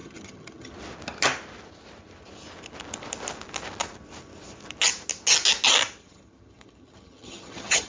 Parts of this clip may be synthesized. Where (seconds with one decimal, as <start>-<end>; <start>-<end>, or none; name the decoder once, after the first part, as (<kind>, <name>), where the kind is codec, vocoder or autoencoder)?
0.0-0.7 (vocoder, HiFi-GAN); 6.0-7.9